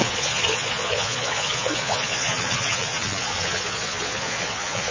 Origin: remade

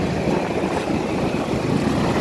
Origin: recorded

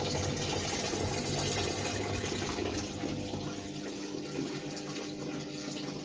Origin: recorded